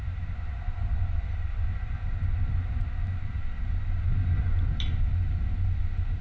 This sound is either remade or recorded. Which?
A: recorded